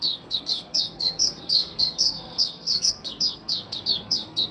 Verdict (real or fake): fake